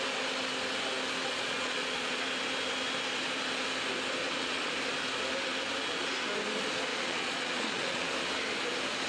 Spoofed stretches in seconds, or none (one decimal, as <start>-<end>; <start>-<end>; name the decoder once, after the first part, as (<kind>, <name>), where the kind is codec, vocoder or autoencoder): 1.2-2.2 (vocoder, Vocos); 4.2-4.7; 6.9-8.1